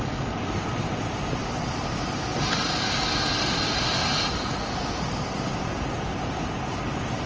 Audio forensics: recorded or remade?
recorded